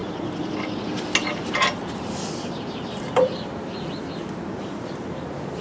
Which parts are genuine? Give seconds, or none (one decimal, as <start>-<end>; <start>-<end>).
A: 0.0-5.6